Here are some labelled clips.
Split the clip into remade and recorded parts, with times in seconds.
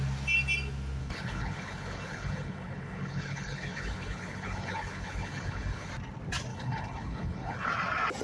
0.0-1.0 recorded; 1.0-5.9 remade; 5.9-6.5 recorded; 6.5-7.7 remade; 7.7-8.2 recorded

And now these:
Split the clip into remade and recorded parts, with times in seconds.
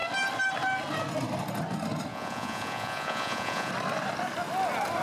0.0-2.1 recorded; 2.1-3.7 remade; 3.7-5.0 recorded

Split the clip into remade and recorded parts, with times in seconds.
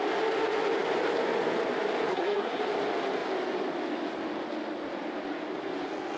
0.0-2.1 recorded; 2.1-2.6 remade; 2.6-6.2 recorded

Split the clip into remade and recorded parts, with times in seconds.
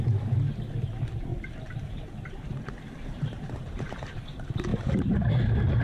0.0-1.3 recorded; 1.3-4.2 remade; 4.2-4.7 recorded; 4.7-5.3 remade; 5.3-5.8 recorded